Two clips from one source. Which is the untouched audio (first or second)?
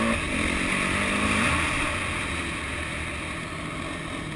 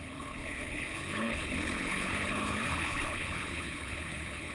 first